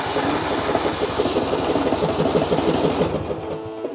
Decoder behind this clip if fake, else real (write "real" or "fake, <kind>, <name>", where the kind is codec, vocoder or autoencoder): real